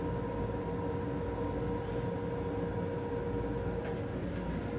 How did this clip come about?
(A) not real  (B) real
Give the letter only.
B